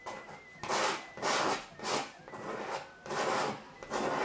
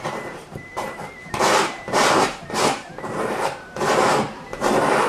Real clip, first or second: first